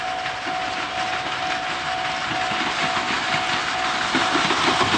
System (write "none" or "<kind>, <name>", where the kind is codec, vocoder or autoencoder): none